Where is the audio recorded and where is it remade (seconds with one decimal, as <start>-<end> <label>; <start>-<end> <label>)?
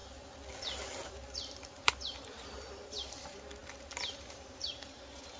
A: 0.0-1.1 recorded; 1.1-5.4 remade